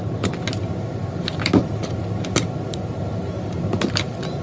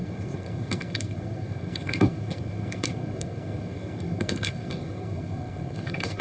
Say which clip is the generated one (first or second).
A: second